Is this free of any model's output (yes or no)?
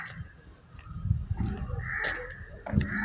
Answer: yes